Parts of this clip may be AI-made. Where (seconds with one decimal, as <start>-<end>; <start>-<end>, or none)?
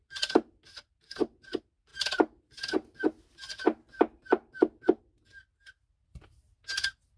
none